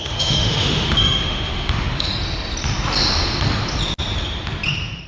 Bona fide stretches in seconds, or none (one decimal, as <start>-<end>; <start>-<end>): 2.1-5.1